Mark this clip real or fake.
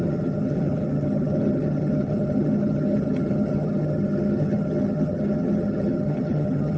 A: fake